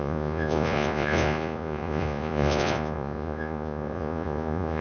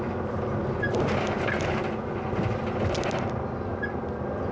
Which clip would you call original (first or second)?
second